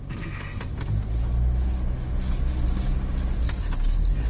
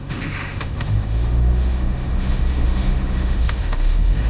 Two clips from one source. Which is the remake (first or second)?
second